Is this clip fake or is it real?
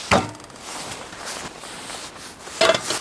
real